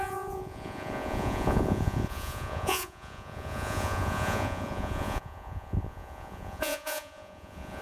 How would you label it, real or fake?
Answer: fake